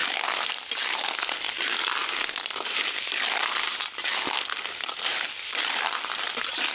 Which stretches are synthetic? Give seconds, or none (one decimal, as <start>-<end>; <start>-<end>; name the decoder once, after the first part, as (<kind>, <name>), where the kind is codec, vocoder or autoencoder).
1.5-2.0 (vocoder, BigVGAN v2); 4.1-6.7